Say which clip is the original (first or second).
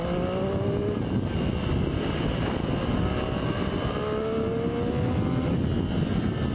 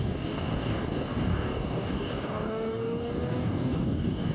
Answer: first